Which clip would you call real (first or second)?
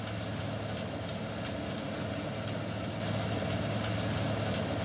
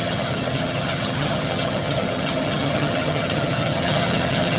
first